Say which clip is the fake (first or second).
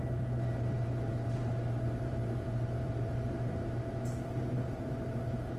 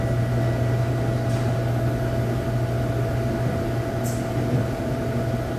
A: first